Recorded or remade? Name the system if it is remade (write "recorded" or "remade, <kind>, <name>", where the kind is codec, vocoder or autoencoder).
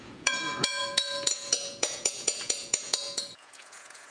remade, vocoder, Vocos